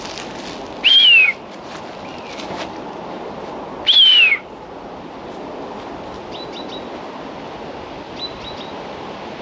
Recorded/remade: recorded